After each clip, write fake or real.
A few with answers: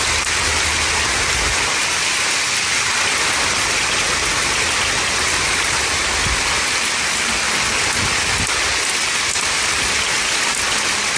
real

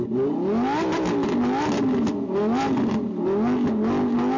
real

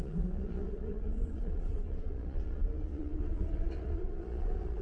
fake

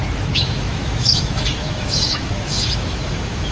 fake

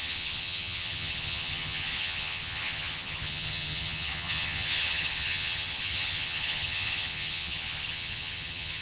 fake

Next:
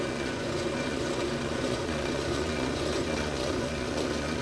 fake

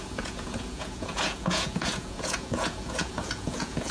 fake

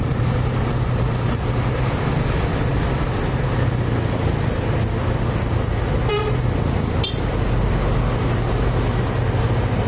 real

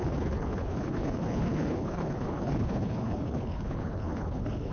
fake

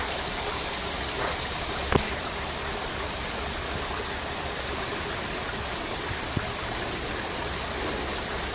real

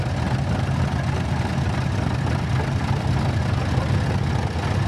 real